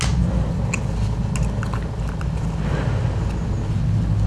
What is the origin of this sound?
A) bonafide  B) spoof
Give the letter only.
A